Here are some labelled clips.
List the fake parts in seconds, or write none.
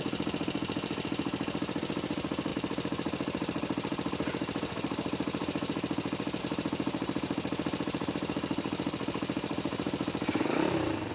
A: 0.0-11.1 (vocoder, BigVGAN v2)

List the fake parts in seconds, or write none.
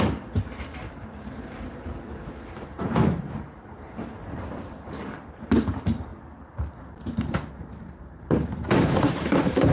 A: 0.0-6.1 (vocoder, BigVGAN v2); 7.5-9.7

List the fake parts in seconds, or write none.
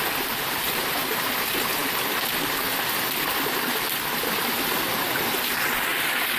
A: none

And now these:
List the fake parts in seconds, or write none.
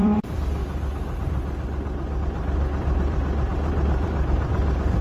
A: 0.0-0.6 (vocoder, BigVGAN v2); 2.2-5.0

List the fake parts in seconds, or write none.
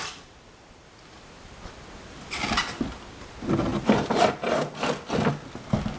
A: 0.0-1.5 (vocoder, BigVGAN v2)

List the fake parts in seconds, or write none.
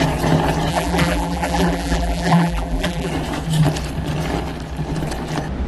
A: 0.7-3.1 (vocoder, BigVGAN v2)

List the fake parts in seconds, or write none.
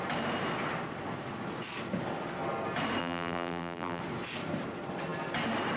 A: 3.0-4.0 (vocoder, BigVGAN v2)